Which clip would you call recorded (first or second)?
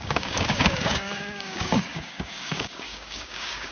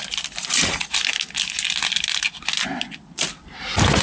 second